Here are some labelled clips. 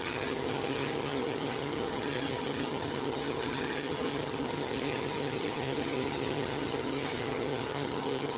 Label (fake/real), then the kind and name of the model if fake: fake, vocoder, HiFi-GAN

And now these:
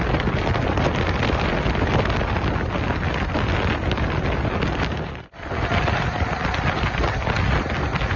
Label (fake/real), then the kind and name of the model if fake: real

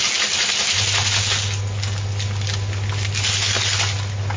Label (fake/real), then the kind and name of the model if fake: real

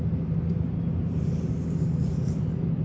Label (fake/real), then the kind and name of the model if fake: real